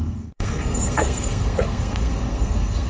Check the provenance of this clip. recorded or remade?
remade